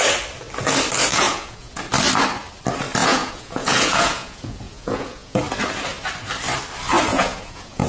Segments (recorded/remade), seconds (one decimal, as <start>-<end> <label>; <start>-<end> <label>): 0.0-1.1 recorded; 1.1-1.8 remade; 1.8-3.0 recorded; 3.0-5.4 remade; 5.4-7.1 recorded; 7.1-7.9 remade